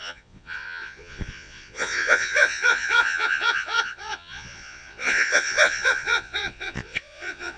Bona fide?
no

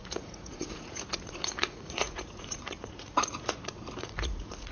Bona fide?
no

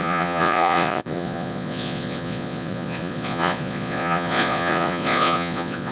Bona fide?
no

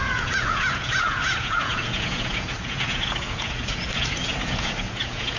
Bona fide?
no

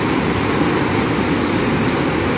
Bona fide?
yes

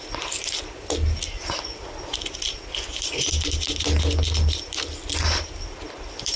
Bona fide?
yes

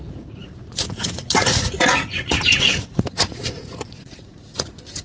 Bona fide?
no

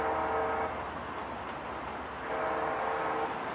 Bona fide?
yes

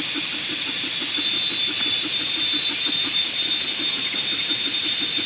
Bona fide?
yes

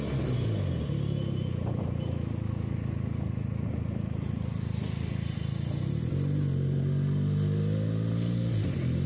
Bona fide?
yes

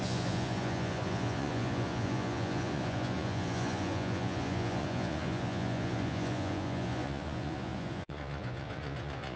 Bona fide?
no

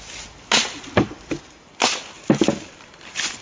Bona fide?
yes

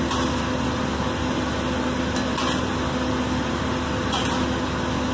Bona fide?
yes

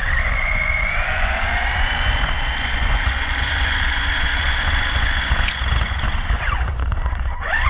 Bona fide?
no